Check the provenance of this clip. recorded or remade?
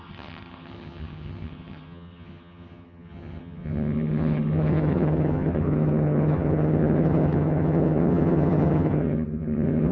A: remade